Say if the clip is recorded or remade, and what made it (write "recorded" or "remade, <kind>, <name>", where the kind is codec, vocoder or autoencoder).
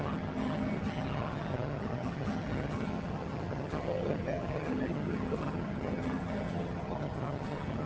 remade, vocoder, HiFi-GAN